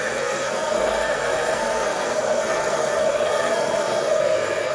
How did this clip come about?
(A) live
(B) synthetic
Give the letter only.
B